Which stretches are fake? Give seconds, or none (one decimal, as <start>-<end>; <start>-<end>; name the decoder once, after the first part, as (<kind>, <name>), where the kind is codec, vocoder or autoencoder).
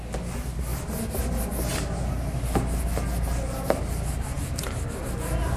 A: none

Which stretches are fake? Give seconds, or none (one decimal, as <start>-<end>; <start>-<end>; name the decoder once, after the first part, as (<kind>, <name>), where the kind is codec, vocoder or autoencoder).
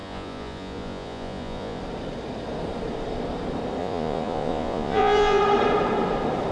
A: 0.0-1.8 (vocoder, Vocos); 3.8-5.4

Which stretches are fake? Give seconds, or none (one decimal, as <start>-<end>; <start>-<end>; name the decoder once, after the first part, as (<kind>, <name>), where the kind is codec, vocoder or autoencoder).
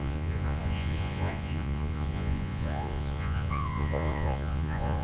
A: 0.0-5.0 (vocoder, Vocos)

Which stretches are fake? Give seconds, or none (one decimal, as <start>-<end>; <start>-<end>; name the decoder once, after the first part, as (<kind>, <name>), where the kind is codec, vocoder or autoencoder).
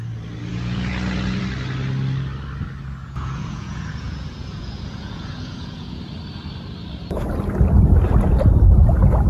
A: 0.5-1.4 (vocoder, Vocos); 3.0-6.0